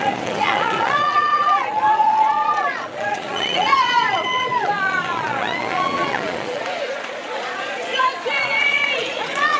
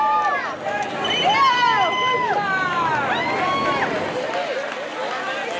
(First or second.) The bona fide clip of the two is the second